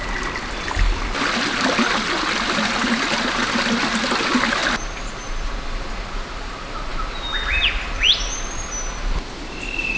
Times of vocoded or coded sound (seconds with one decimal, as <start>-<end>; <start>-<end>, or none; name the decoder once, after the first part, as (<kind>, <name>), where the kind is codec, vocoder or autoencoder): none